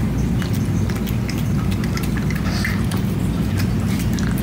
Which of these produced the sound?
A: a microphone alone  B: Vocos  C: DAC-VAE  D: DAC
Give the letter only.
A